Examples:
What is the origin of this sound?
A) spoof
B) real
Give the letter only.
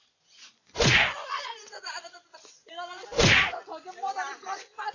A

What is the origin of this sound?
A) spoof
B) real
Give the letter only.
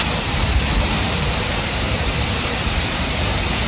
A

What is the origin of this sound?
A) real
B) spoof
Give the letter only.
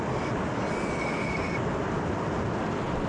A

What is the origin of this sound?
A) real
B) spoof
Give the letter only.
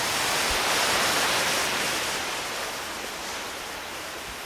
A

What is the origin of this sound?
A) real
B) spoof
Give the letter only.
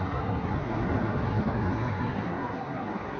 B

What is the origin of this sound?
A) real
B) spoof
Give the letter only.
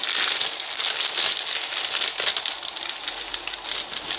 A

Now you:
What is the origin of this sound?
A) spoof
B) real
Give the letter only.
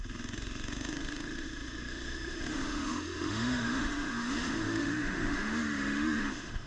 A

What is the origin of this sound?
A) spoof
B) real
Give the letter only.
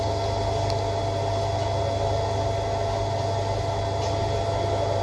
B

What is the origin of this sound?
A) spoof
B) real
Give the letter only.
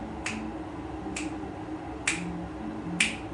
B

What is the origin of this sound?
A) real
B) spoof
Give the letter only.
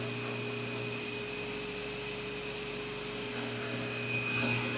A